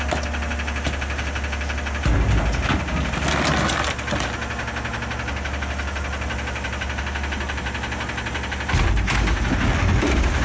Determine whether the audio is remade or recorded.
recorded